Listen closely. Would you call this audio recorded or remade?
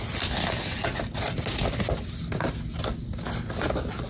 recorded